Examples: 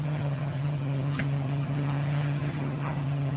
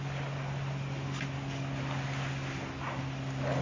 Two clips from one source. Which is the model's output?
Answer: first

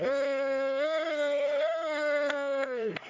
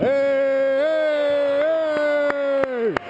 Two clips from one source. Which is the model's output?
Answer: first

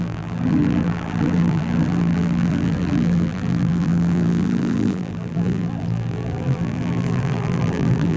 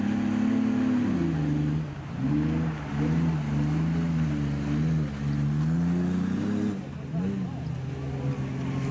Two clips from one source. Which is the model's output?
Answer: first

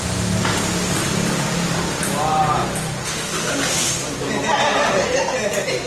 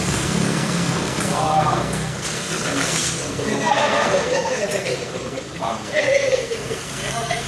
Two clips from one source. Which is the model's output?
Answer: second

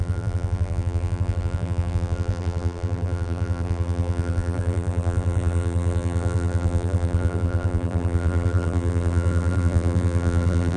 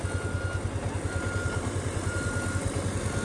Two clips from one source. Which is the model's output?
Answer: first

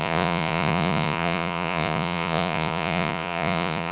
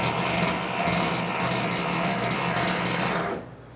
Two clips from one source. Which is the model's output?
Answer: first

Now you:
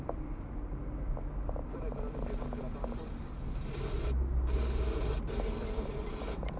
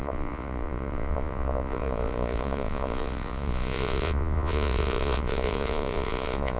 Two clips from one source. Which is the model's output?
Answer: second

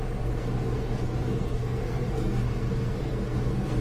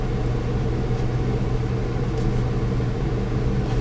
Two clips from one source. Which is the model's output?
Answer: first